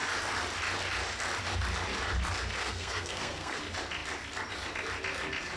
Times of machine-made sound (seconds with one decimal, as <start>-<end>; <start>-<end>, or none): 2.6-3.6